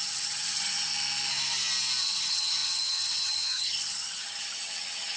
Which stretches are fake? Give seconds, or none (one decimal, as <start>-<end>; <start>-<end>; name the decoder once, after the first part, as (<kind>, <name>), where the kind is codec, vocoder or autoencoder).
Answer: 0.0-0.9 (vocoder, HiFi-GAN); 2.0-5.2